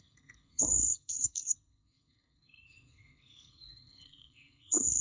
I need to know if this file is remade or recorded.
remade